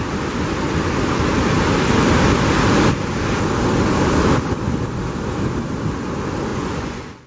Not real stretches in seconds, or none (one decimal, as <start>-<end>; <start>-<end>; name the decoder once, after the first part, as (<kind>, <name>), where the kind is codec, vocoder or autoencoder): 6.5-7.3 (vocoder, Vocos)

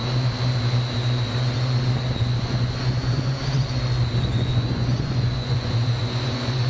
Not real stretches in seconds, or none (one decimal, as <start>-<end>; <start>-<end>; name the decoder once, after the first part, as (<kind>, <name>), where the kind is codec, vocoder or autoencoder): 2.2-3.4 (vocoder, Vocos); 4.3-6.7

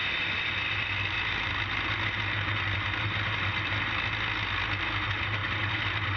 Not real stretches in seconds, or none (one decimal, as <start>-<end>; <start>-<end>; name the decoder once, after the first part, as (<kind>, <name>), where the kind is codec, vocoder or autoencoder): none

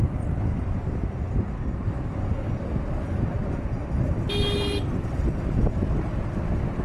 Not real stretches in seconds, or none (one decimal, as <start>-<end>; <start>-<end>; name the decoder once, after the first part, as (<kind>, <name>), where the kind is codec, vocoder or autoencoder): none

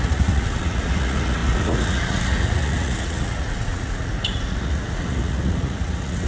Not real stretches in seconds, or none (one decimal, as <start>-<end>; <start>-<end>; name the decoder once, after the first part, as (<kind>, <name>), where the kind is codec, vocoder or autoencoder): 0.0-6.3 (vocoder, Vocos)

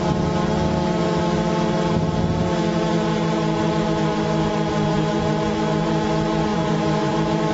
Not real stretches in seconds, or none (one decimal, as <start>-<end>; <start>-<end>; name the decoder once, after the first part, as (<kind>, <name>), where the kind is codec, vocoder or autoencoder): 4.7-5.3 (vocoder, Vocos); 6.5-7.1